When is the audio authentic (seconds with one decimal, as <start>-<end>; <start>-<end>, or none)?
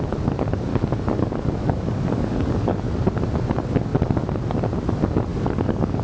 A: 0.0-0.7; 2.8-5.3